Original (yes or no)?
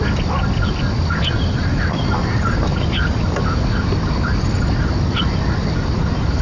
yes